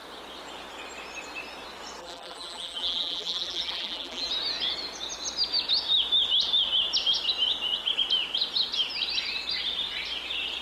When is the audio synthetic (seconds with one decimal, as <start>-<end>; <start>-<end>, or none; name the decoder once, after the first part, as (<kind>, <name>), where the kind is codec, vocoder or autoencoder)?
2.0-4.3 (vocoder, BigVGAN v2)